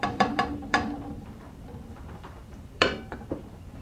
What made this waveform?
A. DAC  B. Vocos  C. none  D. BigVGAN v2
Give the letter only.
D